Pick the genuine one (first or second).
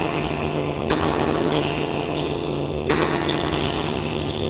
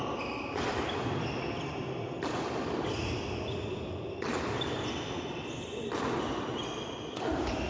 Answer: second